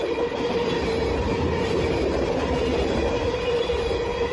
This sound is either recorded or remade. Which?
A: recorded